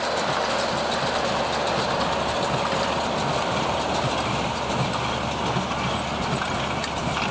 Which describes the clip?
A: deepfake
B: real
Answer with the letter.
B